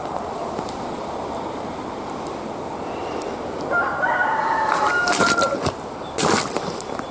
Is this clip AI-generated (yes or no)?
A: yes